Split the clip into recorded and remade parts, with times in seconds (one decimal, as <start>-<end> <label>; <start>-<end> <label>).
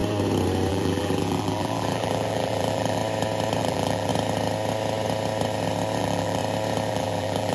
0.0-0.7 recorded; 0.7-3.0 remade; 3.0-3.6 recorded; 3.6-4.1 remade; 4.1-6.0 recorded; 6.0-6.4 remade; 6.4-6.9 recorded; 6.9-7.5 remade